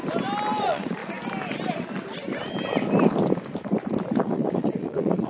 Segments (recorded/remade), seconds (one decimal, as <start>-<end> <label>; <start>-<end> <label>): 0.0-0.6 recorded; 0.6-1.0 remade; 1.0-4.2 recorded; 4.2-5.3 remade